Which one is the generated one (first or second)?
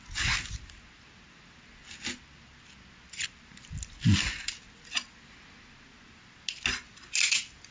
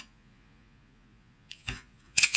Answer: second